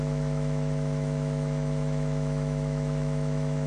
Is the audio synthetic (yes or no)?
yes